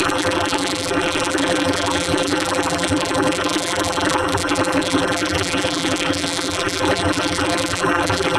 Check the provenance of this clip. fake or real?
fake